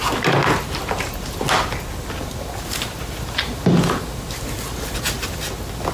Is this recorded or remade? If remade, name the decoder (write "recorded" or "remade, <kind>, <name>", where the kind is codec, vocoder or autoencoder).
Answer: recorded